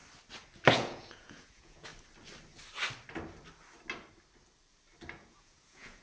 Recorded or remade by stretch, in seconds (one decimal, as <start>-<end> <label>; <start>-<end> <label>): 0.0-0.7 recorded; 0.7-1.9 remade; 1.9-5.1 recorded; 5.1-6.0 remade